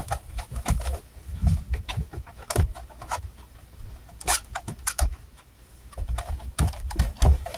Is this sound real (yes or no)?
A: no